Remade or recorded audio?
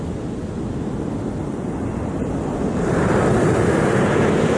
recorded